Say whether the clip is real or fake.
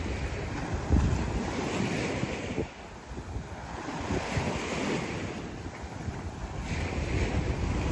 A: real